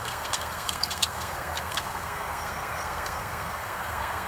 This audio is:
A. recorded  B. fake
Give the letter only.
B